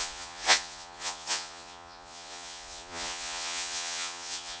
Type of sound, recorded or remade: remade